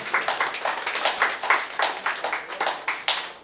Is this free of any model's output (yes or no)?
yes